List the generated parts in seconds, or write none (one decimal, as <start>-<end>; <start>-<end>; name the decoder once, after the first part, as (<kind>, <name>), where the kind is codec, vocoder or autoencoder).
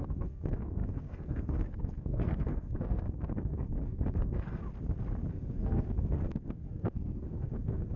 0.0-4.6 (codec, SNAC); 5.3-8.0